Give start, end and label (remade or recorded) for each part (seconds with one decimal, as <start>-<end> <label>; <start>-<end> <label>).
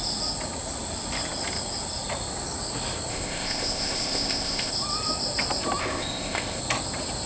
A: 0.0-3.1 recorded; 3.1-4.7 remade; 4.7-5.8 recorded; 5.8-6.6 remade; 6.6-7.3 recorded